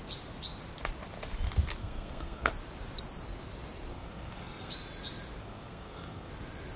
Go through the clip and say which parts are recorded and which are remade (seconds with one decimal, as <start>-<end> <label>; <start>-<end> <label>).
0.0-1.8 recorded; 1.8-2.5 remade; 2.5-3.9 recorded; 3.9-4.7 remade; 4.7-5.4 recorded; 5.4-6.3 remade; 6.3-6.8 recorded